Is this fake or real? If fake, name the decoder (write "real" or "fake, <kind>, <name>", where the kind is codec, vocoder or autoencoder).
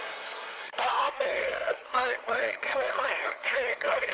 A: fake, codec, SNAC